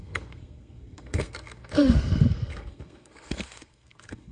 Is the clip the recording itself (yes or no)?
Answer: no